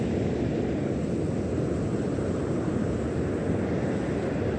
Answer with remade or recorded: recorded